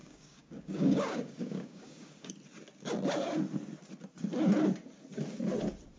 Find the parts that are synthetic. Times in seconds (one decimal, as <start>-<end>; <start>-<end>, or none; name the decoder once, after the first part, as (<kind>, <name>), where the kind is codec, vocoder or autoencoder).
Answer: 0.0-2.3 (codec, DAC)